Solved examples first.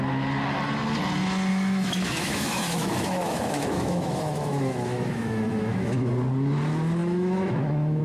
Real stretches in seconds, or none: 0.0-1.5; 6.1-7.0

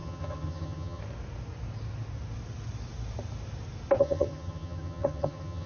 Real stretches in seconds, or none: 1.0-4.0